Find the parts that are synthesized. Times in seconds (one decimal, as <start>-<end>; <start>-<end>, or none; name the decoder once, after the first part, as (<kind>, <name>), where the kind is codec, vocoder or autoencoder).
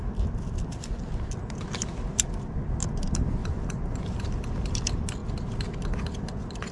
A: 3.4-4.5 (vocoder, BigVGAN v2)